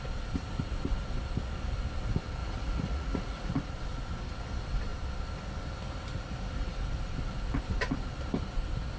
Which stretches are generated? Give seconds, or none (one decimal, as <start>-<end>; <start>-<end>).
2.4-3.5